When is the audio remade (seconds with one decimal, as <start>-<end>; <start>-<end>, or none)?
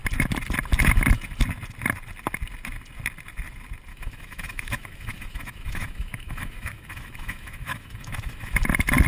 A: 3.9-8.5